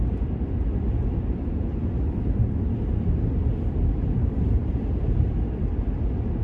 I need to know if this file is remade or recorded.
recorded